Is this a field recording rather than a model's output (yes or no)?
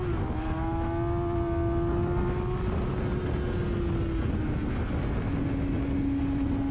yes